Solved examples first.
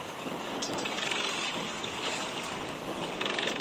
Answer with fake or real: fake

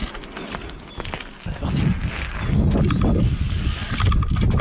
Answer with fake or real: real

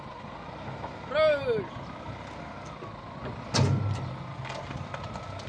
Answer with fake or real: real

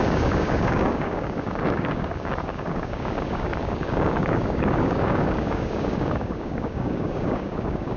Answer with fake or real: fake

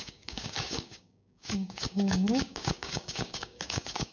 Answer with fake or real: fake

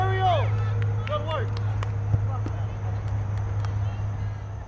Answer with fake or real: real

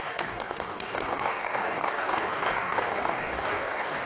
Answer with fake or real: fake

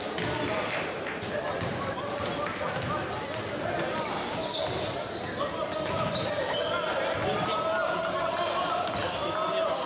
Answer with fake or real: real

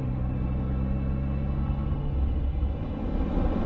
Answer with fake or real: real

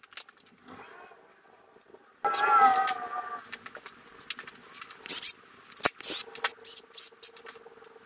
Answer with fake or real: real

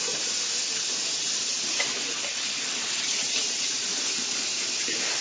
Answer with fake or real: real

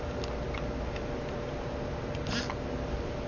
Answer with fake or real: real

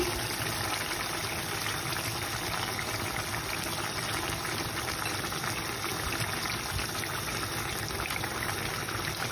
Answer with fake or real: real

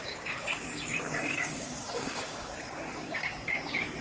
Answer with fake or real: fake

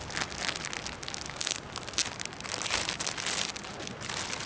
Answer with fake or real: real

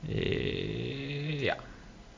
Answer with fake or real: real